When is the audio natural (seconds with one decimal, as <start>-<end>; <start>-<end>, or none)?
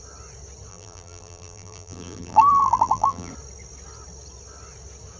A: 0.0-0.7; 3.3-5.2